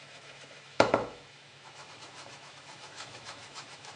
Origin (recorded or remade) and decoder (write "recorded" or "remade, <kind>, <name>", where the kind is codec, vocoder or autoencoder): remade, autoencoder, DAC-VAE